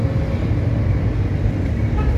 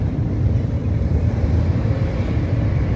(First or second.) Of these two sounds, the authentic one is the first